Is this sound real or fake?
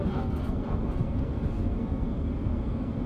fake